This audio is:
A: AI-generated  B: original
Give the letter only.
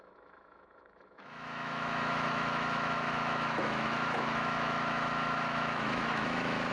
A